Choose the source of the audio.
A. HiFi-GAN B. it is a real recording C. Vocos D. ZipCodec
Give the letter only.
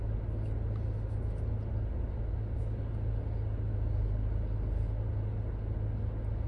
B